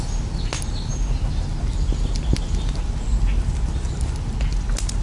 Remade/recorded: recorded